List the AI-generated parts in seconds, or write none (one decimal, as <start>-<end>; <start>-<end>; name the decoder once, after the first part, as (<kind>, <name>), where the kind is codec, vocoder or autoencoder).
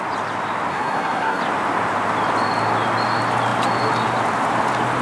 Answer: 0.7-1.4 (codec, SNAC)